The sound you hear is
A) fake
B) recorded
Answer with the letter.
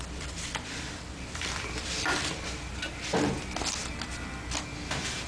B